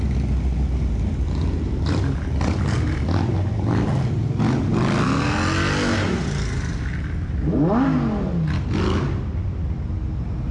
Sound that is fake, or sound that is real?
real